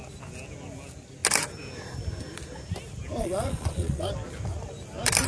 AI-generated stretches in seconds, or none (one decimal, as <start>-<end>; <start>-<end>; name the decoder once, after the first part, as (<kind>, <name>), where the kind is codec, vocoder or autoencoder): 3.2-4.1 (vocoder, Vocos)